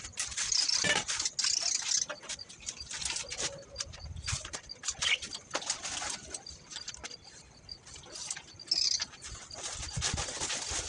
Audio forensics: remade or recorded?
recorded